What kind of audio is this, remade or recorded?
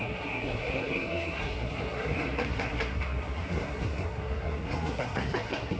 remade